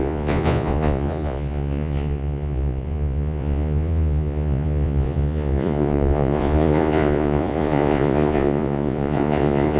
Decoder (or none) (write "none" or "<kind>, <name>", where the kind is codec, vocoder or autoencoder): vocoder, Vocos